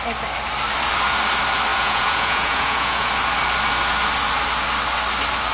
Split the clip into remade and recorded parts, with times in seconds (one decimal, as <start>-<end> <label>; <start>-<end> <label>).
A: 0.0-1.7 recorded; 1.7-3.1 remade; 3.1-5.5 recorded